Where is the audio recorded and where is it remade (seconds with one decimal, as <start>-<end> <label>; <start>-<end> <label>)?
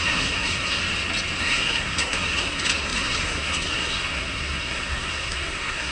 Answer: 0.0-0.8 remade; 0.8-1.4 recorded; 1.4-5.9 remade